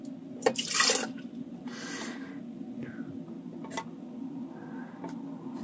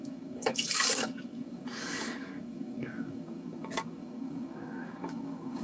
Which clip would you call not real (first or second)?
second